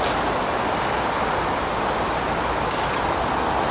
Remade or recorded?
recorded